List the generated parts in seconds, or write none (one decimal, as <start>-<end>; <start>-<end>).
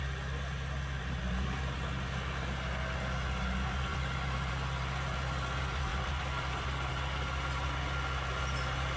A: 3.9-4.5; 5.9-6.9